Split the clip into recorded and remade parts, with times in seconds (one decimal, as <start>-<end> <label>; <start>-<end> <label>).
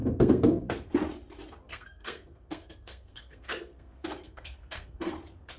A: 0.0-0.9 remade; 0.9-1.7 recorded; 1.7-5.1 remade; 5.1-5.6 recorded